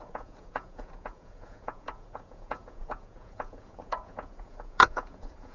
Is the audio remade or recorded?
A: remade